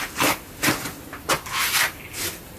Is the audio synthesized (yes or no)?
no